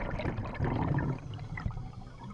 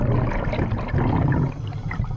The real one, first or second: second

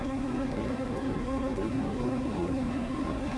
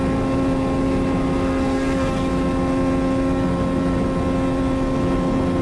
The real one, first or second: second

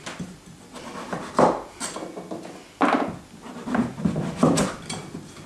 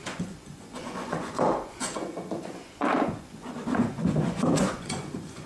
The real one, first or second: first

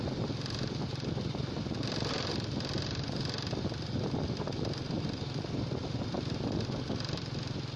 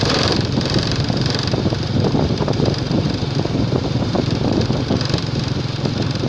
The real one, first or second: first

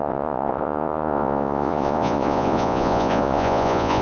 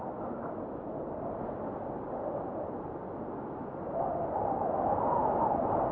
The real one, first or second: second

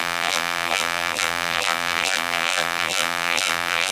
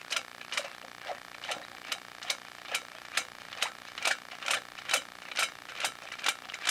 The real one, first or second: second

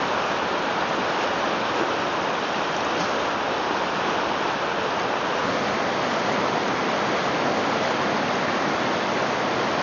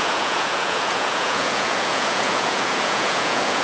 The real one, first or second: first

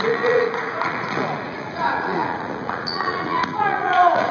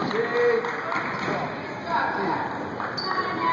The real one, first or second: second